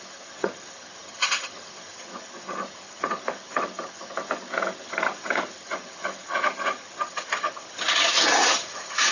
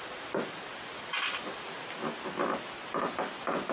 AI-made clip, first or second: first